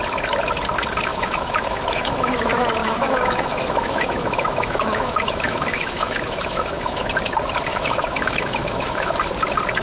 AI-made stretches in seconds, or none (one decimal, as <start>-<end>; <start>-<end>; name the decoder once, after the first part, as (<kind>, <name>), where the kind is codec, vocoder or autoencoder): 1.1-2.4 (autoencoder, DAC-VAE); 2.8-7.1; 7.7-9.1